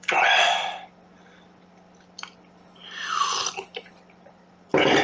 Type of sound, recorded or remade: recorded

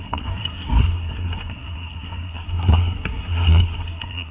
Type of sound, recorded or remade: remade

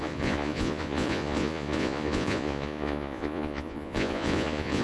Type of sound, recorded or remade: remade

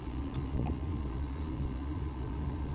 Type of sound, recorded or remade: remade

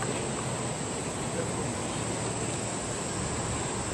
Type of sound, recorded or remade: recorded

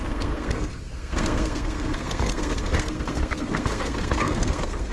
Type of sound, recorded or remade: remade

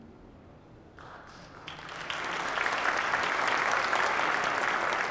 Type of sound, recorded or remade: recorded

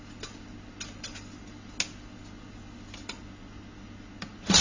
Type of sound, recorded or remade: recorded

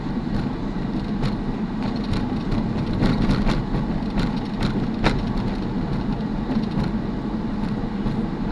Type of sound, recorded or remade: recorded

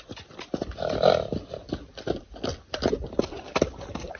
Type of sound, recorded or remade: recorded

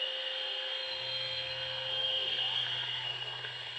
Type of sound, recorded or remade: remade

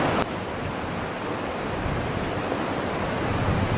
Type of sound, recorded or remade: recorded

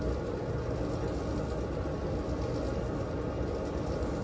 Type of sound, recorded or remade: recorded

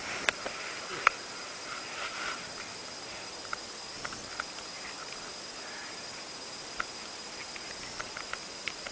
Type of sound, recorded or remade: recorded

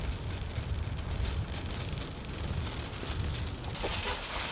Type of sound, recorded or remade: recorded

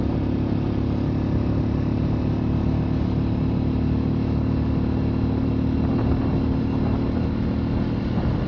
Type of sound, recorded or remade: recorded